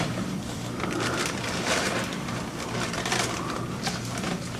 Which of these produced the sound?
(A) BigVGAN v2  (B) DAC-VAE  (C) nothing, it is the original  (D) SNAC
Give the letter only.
A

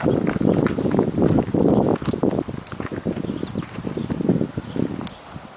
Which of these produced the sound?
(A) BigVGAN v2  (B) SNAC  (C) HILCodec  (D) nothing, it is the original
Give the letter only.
D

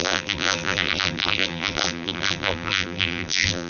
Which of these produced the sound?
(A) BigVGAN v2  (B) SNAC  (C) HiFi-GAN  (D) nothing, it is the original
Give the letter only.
A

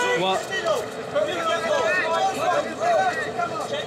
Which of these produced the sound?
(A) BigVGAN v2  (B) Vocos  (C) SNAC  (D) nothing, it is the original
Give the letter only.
D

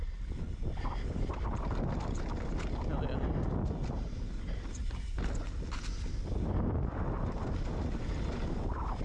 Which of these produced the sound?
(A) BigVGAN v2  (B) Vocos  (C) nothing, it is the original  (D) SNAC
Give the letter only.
C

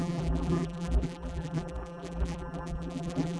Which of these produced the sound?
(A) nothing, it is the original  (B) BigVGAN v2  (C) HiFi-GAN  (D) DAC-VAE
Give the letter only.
B